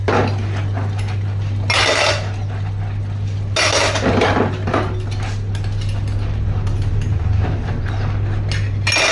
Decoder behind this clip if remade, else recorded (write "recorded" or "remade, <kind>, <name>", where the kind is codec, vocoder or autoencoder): recorded